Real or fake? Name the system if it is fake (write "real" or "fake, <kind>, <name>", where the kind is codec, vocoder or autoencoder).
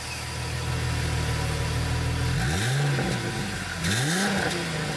real